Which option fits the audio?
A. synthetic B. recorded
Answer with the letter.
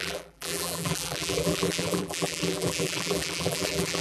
A